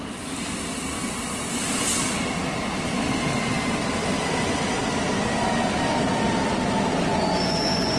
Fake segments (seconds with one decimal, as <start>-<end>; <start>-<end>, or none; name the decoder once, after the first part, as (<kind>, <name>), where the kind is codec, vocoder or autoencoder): 7.1-8.0 (vocoder, Vocos)